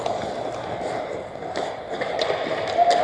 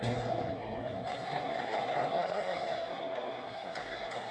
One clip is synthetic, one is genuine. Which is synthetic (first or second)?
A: second